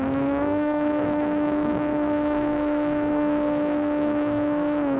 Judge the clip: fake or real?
fake